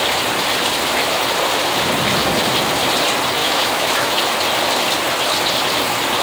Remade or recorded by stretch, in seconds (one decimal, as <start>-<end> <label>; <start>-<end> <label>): 0.0-3.4 recorded; 3.4-4.2 remade; 4.2-6.2 recorded